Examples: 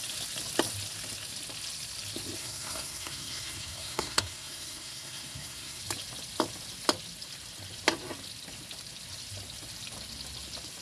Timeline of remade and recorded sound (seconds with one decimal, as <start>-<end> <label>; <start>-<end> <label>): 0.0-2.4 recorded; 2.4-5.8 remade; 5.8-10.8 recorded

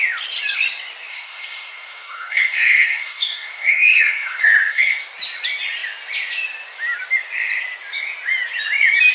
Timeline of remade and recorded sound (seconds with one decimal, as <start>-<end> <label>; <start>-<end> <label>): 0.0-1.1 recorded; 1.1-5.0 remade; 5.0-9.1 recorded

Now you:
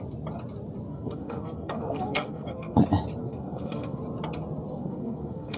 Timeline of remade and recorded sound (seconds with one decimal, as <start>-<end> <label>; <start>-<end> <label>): 0.0-0.9 recorded; 0.9-2.8 remade; 2.8-3.2 recorded; 3.2-4.0 remade; 4.0-4.7 recorded; 4.7-5.6 remade

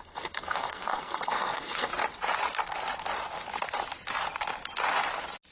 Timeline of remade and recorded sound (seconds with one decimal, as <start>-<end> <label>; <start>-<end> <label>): 0.0-1.9 remade; 1.9-5.5 recorded